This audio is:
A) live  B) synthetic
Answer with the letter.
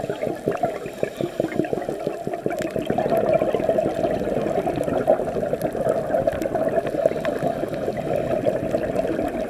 A